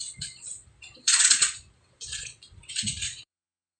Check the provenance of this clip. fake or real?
fake